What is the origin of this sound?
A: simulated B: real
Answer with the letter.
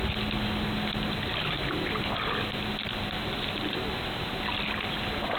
B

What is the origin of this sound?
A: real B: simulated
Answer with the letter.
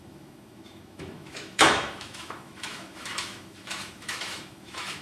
B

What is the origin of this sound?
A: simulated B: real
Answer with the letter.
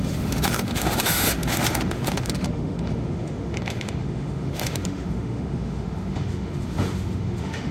A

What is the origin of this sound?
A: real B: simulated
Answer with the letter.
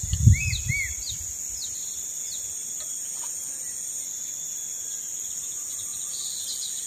A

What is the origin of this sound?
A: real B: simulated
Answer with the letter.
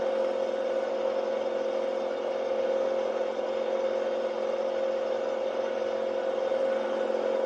A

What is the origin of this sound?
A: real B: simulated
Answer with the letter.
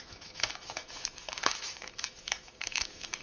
B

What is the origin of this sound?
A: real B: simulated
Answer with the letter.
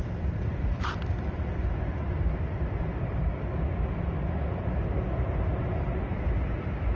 A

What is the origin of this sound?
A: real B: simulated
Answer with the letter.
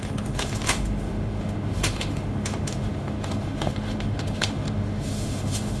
B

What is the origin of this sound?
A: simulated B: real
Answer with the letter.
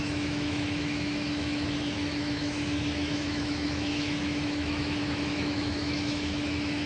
A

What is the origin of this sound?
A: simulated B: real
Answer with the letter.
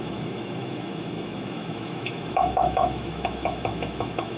A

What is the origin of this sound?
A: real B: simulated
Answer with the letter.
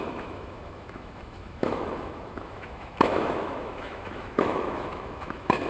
B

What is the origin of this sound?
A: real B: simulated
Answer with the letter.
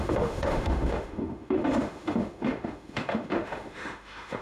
B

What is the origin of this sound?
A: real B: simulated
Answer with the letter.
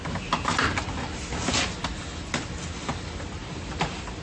A